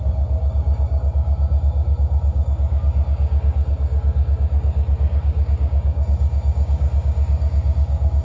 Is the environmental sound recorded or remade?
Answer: remade